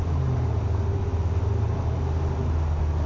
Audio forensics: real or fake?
real